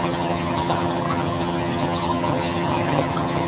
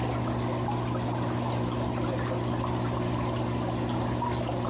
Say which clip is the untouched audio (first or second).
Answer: second